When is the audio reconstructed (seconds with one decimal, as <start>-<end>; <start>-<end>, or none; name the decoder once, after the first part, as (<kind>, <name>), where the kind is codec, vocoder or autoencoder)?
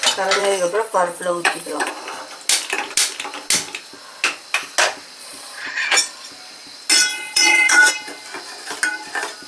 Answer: 0.4-1.9 (vocoder, Vocos); 5.2-6.0; 7.1-7.9